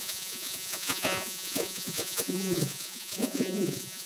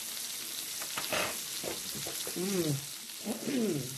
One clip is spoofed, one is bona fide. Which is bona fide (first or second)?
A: second